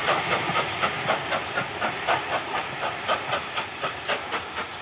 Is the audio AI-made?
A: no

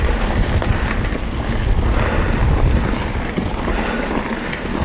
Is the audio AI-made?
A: no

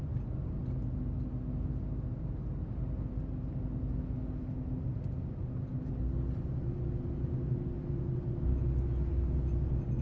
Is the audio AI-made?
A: no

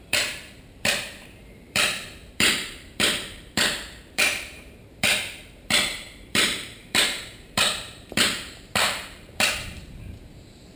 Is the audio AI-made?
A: yes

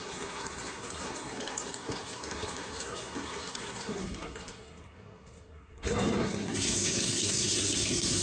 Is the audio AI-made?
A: yes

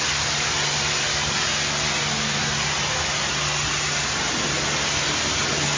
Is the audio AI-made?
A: no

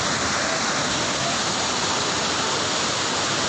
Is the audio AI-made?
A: no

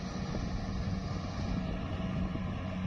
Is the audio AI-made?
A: no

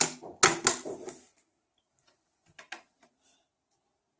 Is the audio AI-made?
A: no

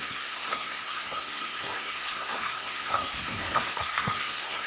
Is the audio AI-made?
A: yes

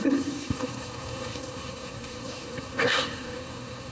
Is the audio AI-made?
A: yes